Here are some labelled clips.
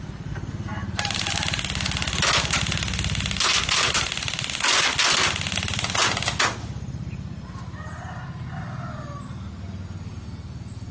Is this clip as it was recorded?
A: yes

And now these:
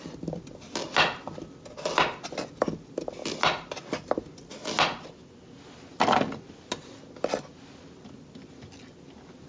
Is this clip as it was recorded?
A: yes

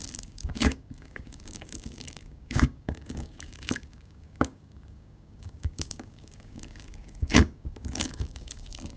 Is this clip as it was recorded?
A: no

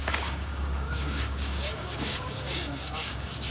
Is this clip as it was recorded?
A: no